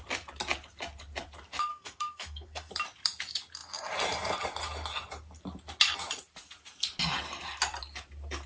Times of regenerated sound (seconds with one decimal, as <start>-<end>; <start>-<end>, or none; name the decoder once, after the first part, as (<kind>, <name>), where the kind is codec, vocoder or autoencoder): 1.7-2.7 (codec, SNAC)

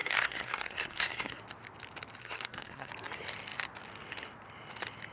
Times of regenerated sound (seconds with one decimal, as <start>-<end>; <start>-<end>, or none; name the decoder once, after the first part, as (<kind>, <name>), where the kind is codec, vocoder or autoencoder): 0.0-1.4 (codec, SNAC); 2.2-2.9

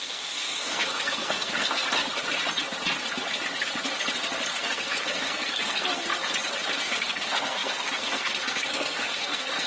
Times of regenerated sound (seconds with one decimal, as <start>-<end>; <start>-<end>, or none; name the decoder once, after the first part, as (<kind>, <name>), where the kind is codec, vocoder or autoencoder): 0.0-1.8 (codec, SNAC); 4.5-6.1; 6.8-9.7

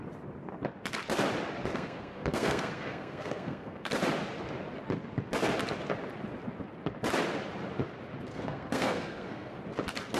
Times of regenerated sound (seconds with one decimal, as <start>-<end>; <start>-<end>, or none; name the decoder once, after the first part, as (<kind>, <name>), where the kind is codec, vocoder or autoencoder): 1.7-3.9 (codec, SNAC); 8.3-9.6

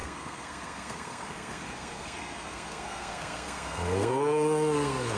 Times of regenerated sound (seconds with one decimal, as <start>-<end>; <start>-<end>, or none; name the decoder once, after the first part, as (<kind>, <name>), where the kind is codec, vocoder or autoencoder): 0.0-5.2 (codec, SNAC)